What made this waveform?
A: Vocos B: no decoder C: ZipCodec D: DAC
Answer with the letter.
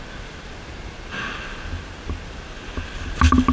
B